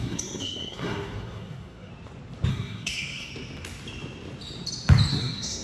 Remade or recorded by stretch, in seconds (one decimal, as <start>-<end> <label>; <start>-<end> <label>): 0.0-1.9 remade; 1.9-2.5 recorded; 2.5-3.3 remade; 3.3-5.1 recorded; 5.1-5.6 remade